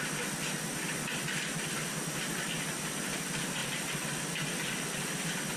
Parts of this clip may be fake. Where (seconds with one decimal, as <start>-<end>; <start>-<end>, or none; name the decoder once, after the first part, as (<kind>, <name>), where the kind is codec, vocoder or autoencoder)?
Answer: none